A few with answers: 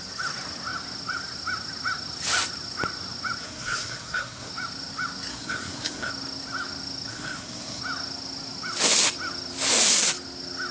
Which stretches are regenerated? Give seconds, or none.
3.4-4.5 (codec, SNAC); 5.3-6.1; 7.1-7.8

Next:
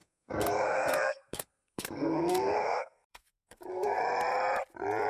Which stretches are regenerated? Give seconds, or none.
0.0-4.0 (codec, SNAC)